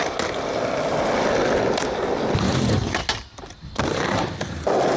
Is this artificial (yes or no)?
no